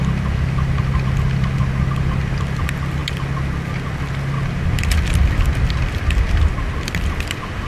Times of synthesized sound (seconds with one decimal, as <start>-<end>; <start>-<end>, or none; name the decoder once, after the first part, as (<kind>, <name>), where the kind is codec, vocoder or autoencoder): none